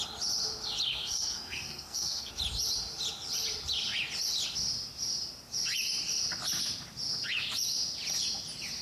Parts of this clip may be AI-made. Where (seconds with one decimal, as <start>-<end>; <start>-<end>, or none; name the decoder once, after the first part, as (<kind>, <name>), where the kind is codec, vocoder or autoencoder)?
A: 0.9-2.3 (codec, SNAC)